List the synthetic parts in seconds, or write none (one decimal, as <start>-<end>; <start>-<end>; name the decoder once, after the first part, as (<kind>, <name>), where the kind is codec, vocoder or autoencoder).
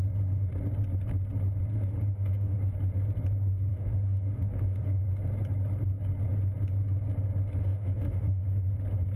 1.7-2.6 (autoencoder, DAC-VAE); 3.7-5.0; 7.6-8.4